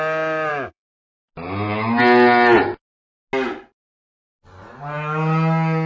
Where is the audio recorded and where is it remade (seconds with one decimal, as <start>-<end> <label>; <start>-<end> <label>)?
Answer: 0.0-0.5 recorded; 0.5-1.1 remade; 1.1-5.9 recorded